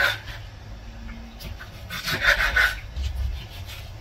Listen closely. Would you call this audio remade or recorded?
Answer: recorded